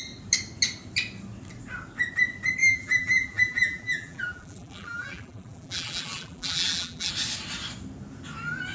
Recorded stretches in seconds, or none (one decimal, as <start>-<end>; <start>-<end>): 0.0-2.6; 7.1-8.7

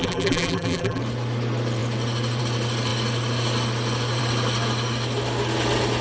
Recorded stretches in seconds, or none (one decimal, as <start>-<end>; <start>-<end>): 1.0-6.0

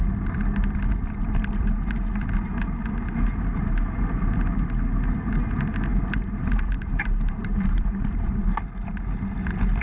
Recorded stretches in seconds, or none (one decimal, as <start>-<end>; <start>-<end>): 0.0-5.9; 8.6-9.8

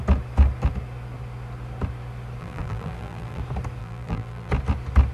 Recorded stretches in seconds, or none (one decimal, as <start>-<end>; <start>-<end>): 0.0-2.4; 3.4-3.8; 4.5-5.1

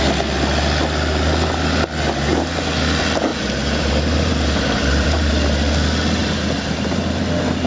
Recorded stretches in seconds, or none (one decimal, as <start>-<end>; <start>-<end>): 0.0-3.3; 5.3-6.2; 7.2-7.7

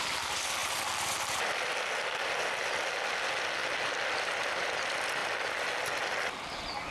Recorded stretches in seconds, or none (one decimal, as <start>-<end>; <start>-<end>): 0.0-0.6; 1.7-3.6; 4.5-5.2; 5.7-6.9

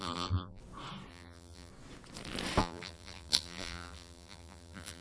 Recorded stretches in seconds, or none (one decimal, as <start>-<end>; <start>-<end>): 0.6-1.1; 1.7-2.6